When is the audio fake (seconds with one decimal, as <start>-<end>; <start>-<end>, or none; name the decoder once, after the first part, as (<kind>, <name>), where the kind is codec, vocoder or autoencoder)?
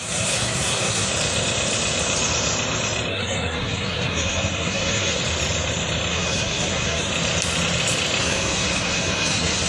0.0-1.1 (codec, SNAC); 3.1-5.2; 6.1-7.1; 8.2-9.7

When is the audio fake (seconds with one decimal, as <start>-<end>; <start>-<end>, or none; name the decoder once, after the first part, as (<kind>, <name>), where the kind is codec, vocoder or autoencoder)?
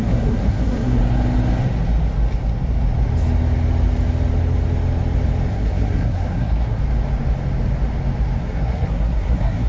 0.0-1.0 (codec, SNAC); 5.5-6.8; 8.4-9.7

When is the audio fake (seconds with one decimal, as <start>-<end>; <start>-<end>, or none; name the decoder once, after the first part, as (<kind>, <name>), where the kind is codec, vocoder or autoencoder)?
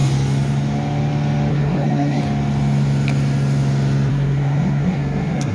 1.5-2.2 (codec, SNAC); 4.1-5.5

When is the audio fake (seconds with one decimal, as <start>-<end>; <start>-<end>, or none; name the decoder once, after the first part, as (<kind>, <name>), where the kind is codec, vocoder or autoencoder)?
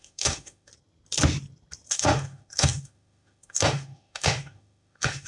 0.0-0.7 (autoencoder, DAC-VAE); 1.9-5.3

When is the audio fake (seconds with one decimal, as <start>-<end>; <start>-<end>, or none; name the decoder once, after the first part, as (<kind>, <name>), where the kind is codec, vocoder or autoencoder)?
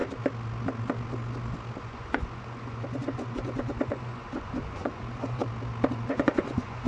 1.8-5.4 (vocoder, Vocos); 5.9-6.9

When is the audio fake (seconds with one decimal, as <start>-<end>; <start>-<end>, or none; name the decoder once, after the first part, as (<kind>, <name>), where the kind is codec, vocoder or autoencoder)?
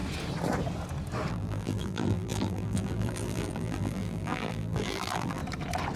1.3-5.4 (vocoder, BigVGAN v2)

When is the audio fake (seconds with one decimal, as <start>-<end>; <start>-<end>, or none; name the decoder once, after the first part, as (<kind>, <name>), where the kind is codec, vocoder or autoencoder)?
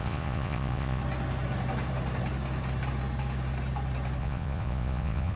0.0-1.0 (vocoder, Vocos); 4.2-5.4